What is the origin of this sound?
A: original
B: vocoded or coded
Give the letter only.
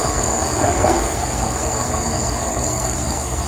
B